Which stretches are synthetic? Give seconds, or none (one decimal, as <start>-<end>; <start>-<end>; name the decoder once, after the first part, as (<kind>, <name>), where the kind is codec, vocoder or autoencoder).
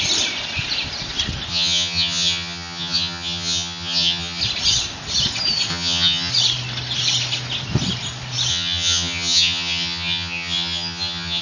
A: 1.5-4.4 (vocoder, HiFi-GAN); 5.7-6.3; 8.5-11.4